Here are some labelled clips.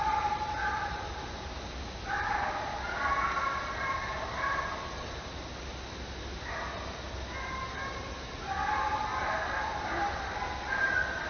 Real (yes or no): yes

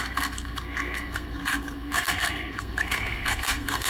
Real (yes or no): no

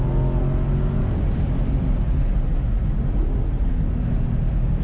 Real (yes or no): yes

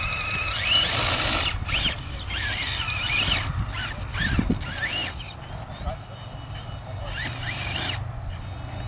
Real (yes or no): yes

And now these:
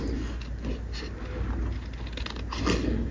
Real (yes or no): yes